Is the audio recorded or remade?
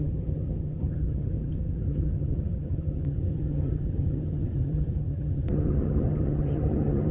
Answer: remade